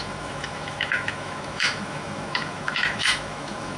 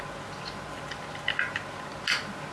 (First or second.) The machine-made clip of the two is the first